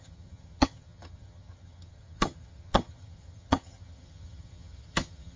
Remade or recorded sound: remade